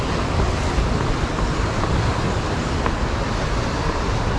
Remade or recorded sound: recorded